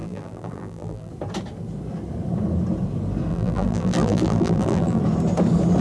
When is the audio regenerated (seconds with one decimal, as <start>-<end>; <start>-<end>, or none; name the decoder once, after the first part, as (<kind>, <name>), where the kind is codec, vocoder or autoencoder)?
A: 0.0-1.1 (vocoder, BigVGAN v2); 3.3-5.0